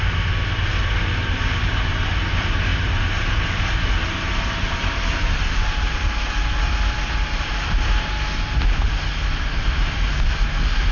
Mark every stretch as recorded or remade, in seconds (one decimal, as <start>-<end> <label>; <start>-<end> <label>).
0.0-10.9 recorded